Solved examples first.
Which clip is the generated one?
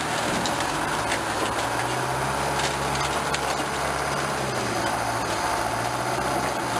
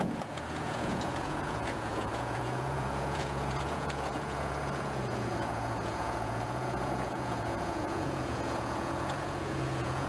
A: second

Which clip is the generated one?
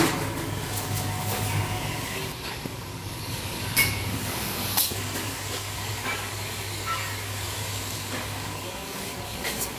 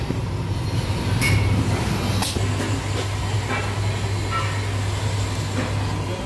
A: first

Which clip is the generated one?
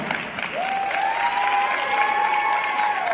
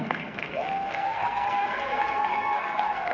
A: second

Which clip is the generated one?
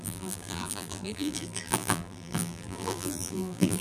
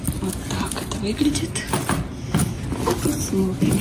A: first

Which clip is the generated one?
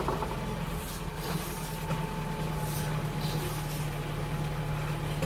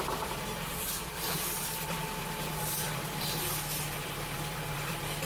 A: second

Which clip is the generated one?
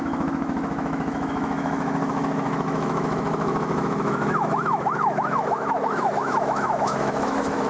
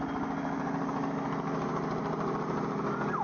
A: first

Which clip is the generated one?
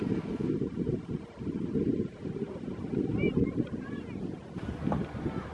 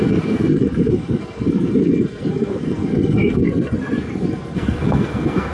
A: second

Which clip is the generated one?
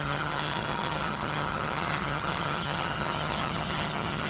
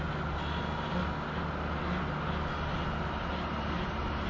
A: first